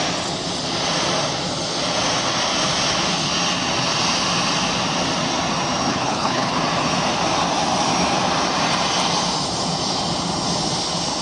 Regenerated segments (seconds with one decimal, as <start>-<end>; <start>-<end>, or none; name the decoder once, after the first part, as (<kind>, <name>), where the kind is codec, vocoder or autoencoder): 5.9-6.5 (codec, HILCodec)